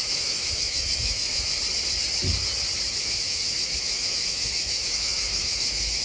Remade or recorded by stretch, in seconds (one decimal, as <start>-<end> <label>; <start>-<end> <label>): 0.0-1.5 remade; 1.5-3.0 recorded; 3.0-6.0 remade